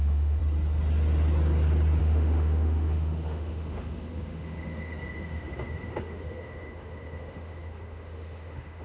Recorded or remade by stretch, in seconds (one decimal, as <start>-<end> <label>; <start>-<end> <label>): 0.0-0.4 remade; 0.4-2.0 recorded; 2.0-8.8 remade